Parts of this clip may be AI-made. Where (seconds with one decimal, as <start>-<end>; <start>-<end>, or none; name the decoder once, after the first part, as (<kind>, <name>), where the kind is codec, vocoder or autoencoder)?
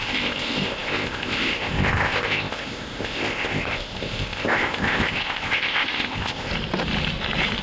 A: 0.0-6.5 (codec, ZipCodec)